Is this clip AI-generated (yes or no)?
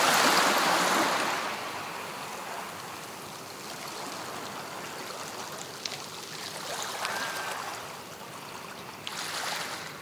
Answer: no